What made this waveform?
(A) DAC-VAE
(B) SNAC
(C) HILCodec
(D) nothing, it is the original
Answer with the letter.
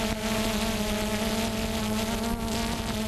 D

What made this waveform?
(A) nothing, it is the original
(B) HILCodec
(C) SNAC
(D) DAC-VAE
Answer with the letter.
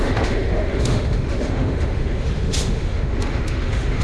D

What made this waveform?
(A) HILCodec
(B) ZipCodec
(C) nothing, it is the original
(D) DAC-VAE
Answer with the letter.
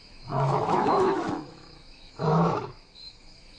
D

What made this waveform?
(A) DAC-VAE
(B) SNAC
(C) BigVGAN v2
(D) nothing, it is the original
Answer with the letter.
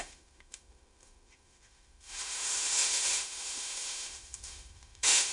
A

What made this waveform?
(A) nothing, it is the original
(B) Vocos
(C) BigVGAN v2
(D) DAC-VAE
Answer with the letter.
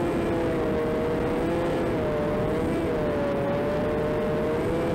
A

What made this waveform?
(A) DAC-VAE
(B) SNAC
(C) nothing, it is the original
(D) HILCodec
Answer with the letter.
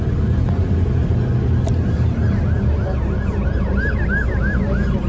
C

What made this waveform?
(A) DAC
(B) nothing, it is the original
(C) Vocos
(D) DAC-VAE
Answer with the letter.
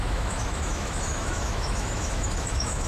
D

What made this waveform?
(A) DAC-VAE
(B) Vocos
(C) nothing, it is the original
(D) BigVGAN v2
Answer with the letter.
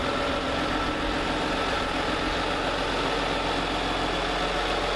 C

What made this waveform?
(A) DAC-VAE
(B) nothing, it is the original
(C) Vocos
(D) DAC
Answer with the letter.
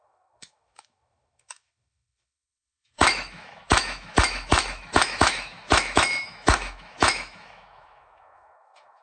A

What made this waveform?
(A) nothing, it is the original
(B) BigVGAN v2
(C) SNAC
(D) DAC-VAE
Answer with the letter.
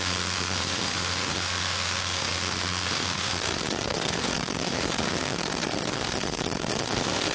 D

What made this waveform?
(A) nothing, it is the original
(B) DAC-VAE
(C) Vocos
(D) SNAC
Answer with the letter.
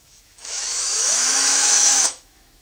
B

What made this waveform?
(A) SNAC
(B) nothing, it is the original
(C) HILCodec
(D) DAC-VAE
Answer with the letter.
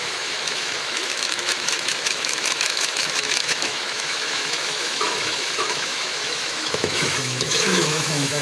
D